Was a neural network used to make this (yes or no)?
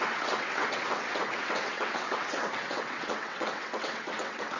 yes